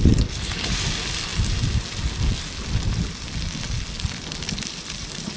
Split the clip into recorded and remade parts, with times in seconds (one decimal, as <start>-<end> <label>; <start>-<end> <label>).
0.0-5.4 recorded